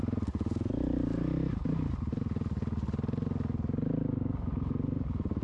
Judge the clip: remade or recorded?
recorded